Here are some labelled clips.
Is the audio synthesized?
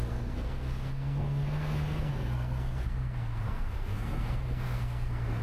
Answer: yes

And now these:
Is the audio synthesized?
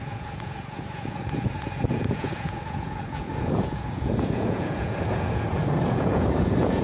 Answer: yes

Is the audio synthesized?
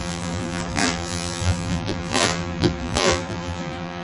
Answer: yes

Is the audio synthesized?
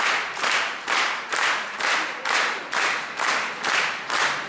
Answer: no